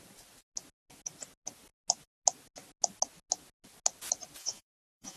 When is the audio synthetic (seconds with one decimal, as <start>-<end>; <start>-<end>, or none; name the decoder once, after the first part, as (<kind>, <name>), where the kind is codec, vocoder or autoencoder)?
4.4-5.2 (vocoder, Vocos)